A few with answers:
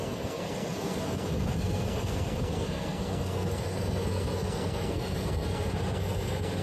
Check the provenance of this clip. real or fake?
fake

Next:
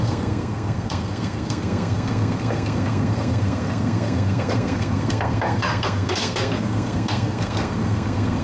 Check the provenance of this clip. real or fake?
fake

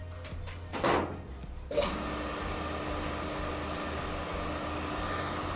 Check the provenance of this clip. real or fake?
real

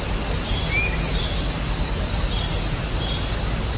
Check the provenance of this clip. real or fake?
real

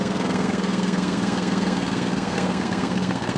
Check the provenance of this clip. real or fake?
fake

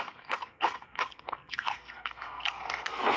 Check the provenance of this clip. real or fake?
fake